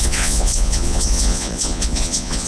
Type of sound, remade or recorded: remade